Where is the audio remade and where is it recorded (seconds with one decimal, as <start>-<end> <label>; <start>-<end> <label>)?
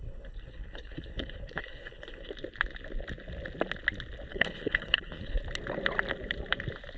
0.0-2.3 remade; 2.3-4.3 recorded; 4.3-5.4 remade; 5.4-7.0 recorded